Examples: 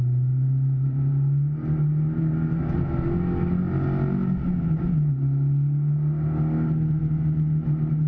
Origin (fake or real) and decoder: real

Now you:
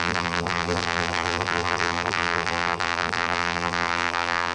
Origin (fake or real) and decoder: fake, vocoder, BigVGAN v2